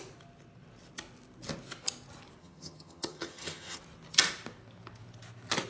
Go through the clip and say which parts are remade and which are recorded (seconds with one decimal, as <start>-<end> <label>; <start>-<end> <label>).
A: 0.0-2.4 recorded; 2.4-3.8 remade; 3.8-5.7 recorded